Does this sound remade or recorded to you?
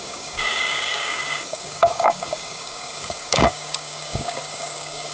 remade